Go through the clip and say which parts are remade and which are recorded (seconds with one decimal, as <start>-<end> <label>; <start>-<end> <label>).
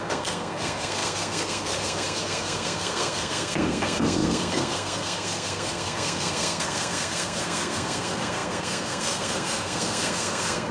0.0-10.7 remade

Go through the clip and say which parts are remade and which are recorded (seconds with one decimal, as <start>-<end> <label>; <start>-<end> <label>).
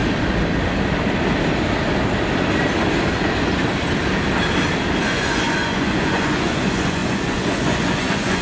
0.0-5.0 recorded; 5.0-8.4 remade